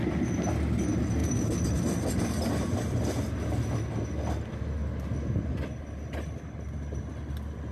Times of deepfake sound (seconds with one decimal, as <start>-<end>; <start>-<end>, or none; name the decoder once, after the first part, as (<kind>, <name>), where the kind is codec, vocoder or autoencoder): none